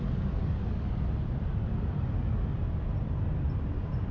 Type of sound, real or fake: real